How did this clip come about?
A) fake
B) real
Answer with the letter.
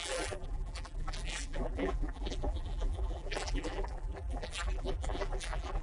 A